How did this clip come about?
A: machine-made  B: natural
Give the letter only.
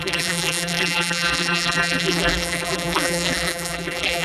A